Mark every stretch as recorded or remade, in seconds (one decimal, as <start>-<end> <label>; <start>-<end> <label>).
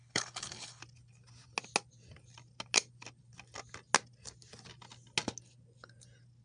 0.0-0.8 remade; 0.8-6.4 recorded